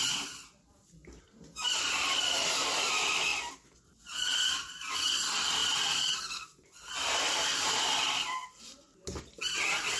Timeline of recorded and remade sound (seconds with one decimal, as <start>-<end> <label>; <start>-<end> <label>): 0.0-3.3 remade; 3.3-4.5 recorded; 4.5-5.6 remade; 5.6-9.2 recorded; 9.2-10.0 remade